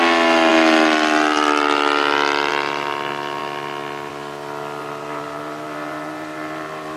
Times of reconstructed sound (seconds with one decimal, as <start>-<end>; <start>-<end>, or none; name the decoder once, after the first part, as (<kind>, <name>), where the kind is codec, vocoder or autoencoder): 4.8-7.0 (vocoder, BigVGAN v2)